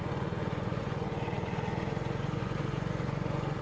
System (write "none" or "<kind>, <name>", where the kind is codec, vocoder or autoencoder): vocoder, Vocos